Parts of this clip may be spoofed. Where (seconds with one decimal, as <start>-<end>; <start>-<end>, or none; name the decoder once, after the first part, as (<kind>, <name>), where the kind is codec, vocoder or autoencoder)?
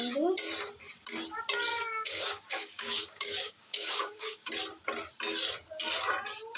1.7-4.5 (codec, DAC)